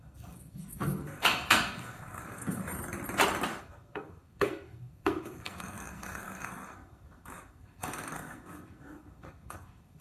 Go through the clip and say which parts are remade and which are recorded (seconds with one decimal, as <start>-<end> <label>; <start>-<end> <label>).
0.0-2.6 remade; 2.6-3.6 recorded; 3.6-10.0 remade